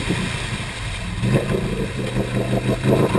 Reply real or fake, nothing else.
real